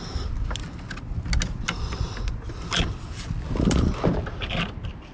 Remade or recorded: recorded